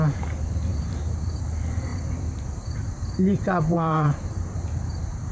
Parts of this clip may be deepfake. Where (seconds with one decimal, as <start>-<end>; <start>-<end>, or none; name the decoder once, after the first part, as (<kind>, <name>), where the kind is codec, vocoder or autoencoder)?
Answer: 0.7-1.4 (vocoder, BigVGAN v2); 1.9-5.3